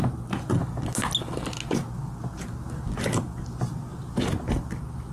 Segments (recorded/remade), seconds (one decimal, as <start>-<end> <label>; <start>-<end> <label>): 0.0-5.1 recorded